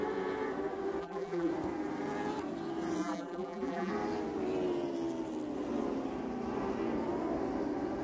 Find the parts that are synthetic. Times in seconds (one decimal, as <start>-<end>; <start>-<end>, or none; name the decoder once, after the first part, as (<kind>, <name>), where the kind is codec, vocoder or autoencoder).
1.0-1.5 (vocoder, BigVGAN v2); 3.0-3.9